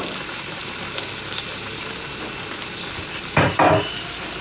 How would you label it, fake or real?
real